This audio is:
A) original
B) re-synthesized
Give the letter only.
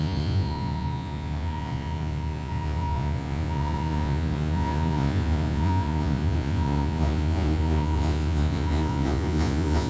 B